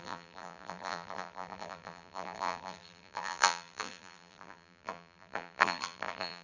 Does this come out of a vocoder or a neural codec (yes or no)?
yes